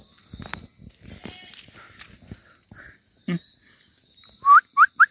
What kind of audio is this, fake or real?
real